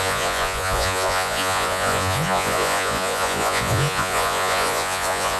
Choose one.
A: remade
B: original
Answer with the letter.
A